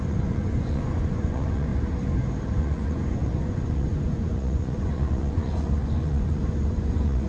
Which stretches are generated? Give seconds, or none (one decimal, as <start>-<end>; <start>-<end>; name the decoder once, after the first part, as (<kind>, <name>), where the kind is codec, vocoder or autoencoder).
0.0-1.7 (vocoder, Vocos); 2.6-7.3